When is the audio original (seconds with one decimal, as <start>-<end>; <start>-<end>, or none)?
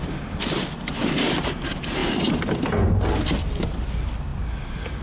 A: 0.0-5.0